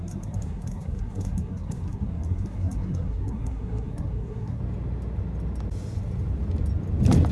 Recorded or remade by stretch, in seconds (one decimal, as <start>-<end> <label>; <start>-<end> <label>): 0.0-4.6 remade; 4.6-7.3 recorded